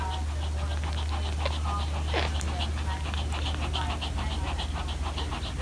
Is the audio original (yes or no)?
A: yes